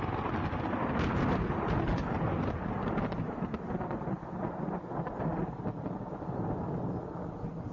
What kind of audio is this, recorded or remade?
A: recorded